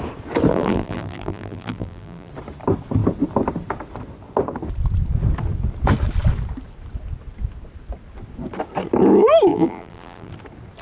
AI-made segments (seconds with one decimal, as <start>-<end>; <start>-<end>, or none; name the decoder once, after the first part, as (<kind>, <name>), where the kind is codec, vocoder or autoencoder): 0.5-2.3 (vocoder, BigVGAN v2); 9.5-10.3

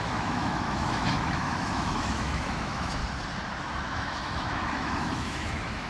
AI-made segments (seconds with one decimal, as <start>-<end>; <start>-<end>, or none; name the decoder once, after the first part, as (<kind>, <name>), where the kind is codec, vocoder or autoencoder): 0.0-3.0 (autoencoder, DAC-VAE); 3.6-5.9

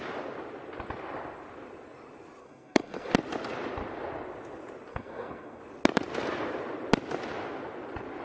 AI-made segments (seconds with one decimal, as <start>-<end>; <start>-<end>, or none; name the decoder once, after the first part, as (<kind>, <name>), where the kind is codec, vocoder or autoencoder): 2.4-3.1 (codec, SNAC); 4.9-5.6

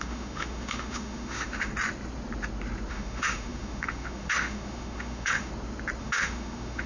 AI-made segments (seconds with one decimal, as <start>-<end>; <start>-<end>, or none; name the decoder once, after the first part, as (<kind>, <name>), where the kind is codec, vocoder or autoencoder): 0.0-1.7 (autoencoder, DAC-VAE); 2.9-5.5; 6.0-6.9

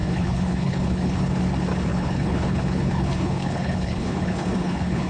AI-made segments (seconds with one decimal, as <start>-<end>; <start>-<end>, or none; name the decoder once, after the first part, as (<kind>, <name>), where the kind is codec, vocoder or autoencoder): 0.0-1.4 (codec, HILCodec); 1.9-5.1